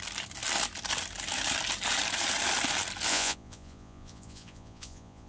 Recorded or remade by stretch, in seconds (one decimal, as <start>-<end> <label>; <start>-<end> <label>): 0.0-3.1 recorded; 3.1-5.3 remade